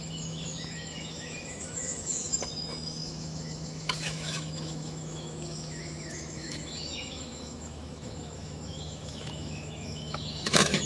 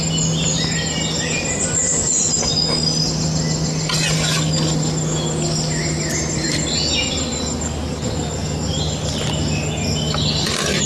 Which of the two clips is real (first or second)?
second